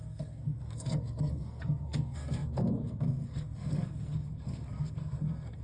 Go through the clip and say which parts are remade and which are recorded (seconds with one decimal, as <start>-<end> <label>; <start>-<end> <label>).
0.0-5.6 remade